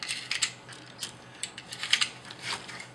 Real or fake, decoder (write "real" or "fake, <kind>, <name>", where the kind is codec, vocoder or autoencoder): real